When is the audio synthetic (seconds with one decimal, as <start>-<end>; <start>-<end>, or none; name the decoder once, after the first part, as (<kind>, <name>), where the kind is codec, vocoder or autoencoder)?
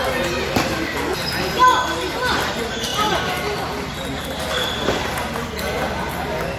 none